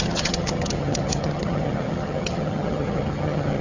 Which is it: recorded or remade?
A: remade